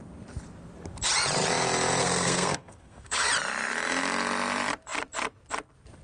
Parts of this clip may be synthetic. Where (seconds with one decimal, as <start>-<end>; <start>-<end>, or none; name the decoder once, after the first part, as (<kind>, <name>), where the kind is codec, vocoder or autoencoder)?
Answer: 2.0-3.3 (codec, SNAC)